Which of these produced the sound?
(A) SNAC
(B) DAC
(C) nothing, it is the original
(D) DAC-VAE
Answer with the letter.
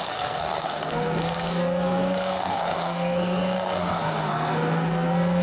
A